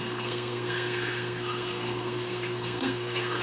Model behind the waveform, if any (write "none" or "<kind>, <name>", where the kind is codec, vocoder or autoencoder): codec, SNAC